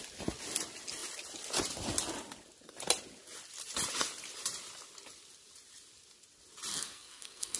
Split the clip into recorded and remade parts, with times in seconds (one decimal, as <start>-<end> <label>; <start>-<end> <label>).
0.0-6.7 recorded; 6.7-7.6 remade